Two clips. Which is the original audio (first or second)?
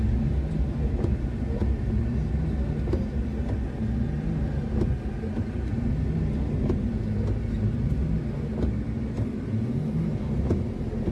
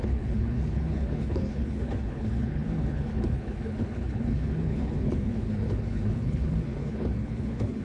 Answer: first